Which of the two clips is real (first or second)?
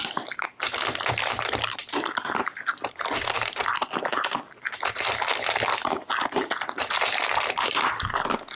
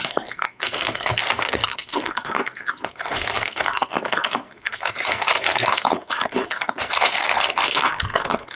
first